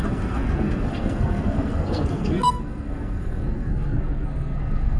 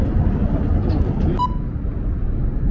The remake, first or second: first